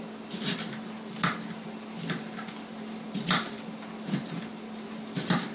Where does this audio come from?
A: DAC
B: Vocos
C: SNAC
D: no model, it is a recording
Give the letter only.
D